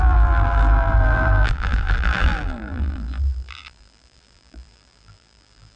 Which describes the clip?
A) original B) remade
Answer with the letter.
B